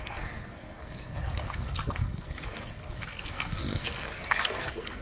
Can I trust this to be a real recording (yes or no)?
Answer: no